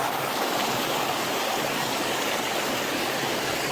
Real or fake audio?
fake